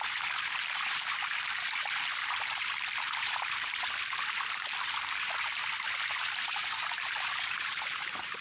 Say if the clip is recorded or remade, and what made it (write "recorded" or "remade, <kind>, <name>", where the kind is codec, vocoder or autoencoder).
remade, vocoder, BigVGAN v2